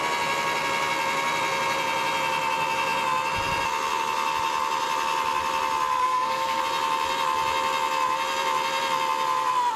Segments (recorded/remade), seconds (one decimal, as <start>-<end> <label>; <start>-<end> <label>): 0.0-6.0 recorded; 6.0-6.6 remade; 6.6-9.8 recorded